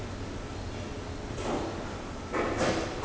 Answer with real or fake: real